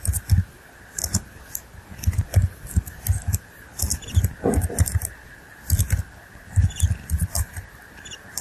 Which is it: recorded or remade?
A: recorded